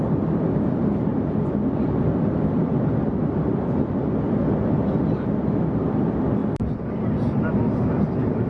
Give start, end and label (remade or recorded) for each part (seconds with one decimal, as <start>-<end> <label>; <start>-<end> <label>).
0.0-8.5 recorded